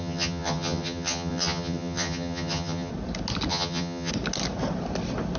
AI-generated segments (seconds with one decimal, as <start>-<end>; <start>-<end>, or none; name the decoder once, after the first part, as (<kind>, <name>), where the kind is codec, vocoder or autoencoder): 0.0-2.9 (vocoder, HiFi-GAN); 3.5-4.1